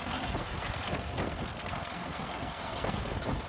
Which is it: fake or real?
fake